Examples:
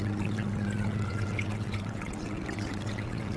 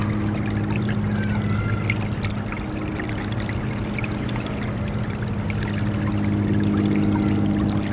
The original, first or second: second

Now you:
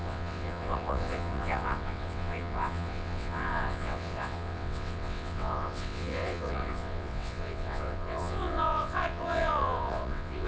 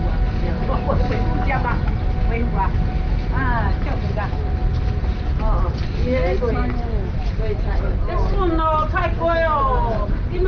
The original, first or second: second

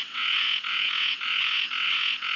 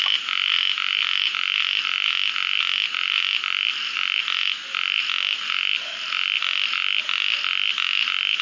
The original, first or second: second